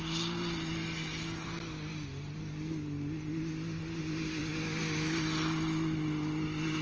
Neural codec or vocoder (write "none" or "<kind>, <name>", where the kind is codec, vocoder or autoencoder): none